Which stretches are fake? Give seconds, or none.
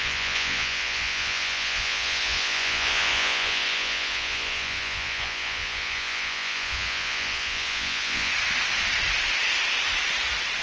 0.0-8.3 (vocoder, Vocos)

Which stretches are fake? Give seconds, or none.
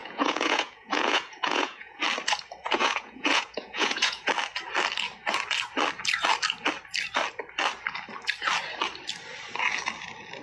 0.0-2.0 (vocoder, Vocos); 2.6-4.3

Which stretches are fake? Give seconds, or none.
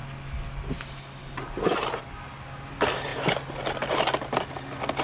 none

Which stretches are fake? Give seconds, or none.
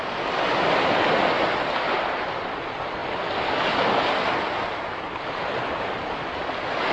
none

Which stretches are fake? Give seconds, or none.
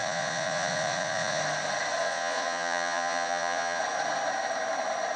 0.0-1.4 (vocoder, Vocos); 2.0-3.8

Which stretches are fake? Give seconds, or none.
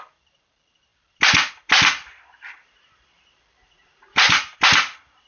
3.6-4.4 (vocoder, Vocos)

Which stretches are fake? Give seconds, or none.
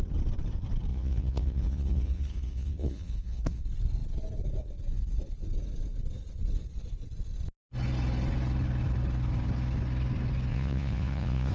0.9-3.6 (vocoder, Vocos); 10.5-11.5